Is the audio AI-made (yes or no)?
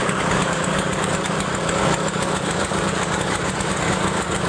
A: yes